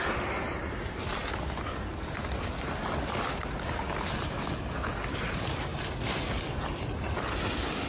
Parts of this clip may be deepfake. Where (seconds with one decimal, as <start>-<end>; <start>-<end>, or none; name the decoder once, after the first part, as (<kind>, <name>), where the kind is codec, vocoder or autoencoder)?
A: none